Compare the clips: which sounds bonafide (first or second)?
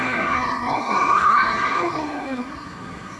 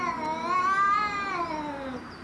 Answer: second